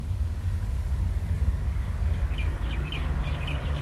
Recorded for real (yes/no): no